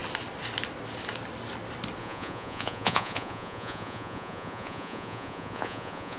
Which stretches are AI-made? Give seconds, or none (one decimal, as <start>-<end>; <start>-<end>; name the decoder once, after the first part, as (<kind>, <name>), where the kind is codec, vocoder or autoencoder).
2.0-6.2 (vocoder, Vocos)